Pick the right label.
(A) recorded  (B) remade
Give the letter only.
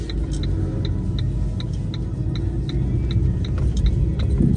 A